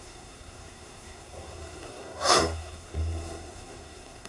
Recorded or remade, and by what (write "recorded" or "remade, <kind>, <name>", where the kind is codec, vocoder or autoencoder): remade, codec, SNAC